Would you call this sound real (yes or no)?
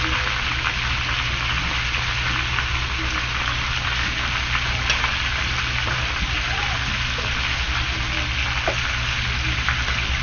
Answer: yes